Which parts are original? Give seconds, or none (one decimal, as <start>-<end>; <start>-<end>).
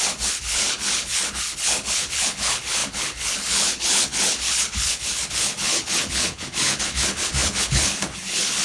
none